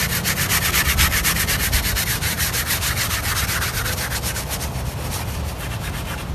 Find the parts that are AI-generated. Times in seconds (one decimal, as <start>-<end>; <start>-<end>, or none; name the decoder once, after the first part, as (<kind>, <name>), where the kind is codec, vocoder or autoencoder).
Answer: none